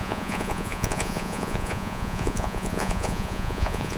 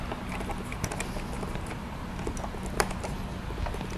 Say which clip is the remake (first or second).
first